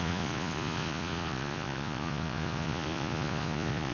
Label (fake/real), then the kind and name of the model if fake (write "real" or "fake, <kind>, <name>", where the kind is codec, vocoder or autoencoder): fake, vocoder, Vocos